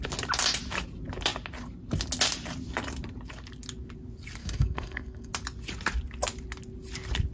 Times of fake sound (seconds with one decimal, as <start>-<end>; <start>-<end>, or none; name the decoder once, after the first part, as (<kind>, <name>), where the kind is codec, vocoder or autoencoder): 4.4-5.3 (codec, SNAC)